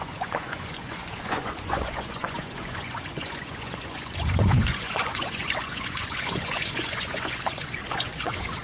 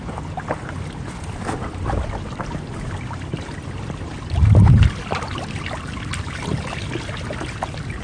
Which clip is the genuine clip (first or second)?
second